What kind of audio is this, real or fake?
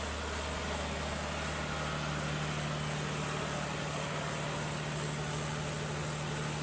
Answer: real